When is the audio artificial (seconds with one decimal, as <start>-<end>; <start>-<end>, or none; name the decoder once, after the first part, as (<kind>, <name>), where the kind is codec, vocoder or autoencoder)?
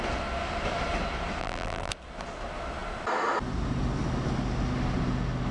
1.4-1.9 (vocoder, BigVGAN v2)